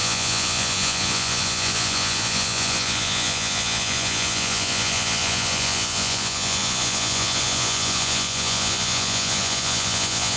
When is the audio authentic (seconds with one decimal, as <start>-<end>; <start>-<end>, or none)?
none